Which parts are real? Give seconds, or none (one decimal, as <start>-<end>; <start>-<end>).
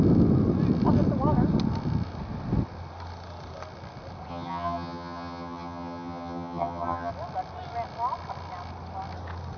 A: 0.0-4.3; 7.1-9.6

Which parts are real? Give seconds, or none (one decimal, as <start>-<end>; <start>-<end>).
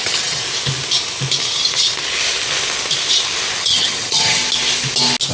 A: 0.4-3.6; 4.4-5.3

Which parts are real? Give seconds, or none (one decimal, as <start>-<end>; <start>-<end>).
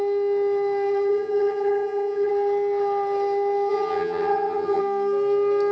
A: 0.0-1.1; 2.3-3.7; 4.8-5.7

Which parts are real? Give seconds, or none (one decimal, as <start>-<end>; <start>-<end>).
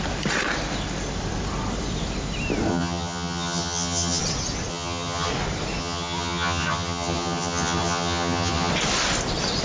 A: 0.0-2.7; 4.2-4.7; 5.3-5.8; 8.7-9.6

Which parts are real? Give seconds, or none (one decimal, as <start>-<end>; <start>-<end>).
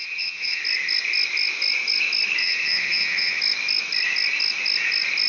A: 0.6-2.4; 3.4-5.3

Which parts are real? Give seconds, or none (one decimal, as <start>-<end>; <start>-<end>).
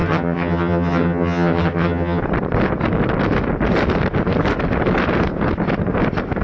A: 2.2-6.4